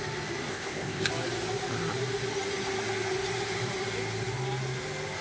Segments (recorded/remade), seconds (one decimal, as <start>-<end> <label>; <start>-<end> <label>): 0.0-0.5 recorded; 0.5-1.1 remade; 1.1-5.2 recorded